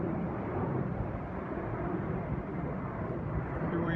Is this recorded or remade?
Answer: remade